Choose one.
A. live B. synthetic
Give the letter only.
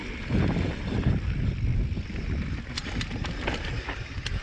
A